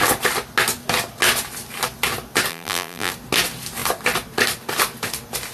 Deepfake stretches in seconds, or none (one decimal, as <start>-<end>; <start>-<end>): 2.5-3.1